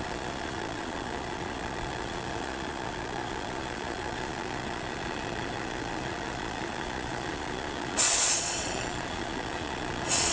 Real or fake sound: fake